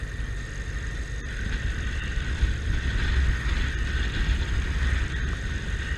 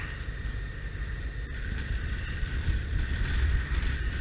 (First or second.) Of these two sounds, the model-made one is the second